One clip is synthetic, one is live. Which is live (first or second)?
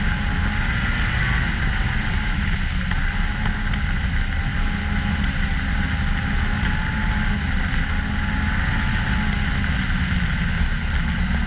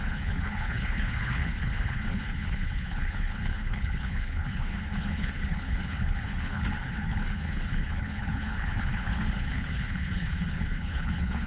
first